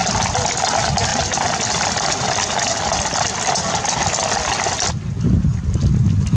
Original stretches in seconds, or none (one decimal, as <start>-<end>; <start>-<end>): 0.0-6.4

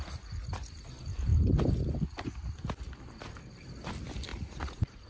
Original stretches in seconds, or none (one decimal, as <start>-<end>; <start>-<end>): 0.0-4.3

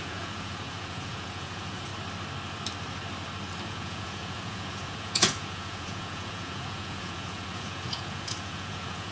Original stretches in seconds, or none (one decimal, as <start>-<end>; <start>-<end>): 1.9-3.7